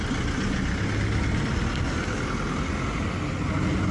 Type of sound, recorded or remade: recorded